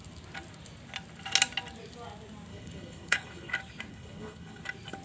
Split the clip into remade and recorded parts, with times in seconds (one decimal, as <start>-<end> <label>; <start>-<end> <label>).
0.0-2.5 recorded; 2.5-3.5 remade; 3.5-3.9 recorded; 3.9-4.6 remade; 4.6-5.0 recorded